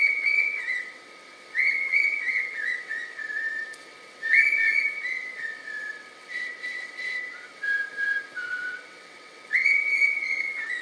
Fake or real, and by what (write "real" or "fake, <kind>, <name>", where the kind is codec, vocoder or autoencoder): fake, vocoder, WaveNeXt